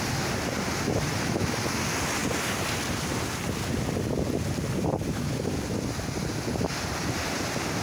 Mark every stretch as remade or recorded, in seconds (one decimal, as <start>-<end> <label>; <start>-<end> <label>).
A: 0.0-7.8 recorded